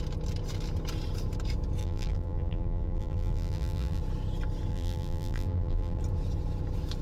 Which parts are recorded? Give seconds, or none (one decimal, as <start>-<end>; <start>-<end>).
0.0-1.8; 4.0-4.7; 6.0-7.0